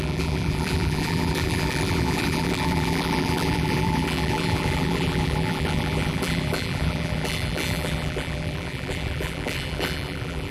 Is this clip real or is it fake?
fake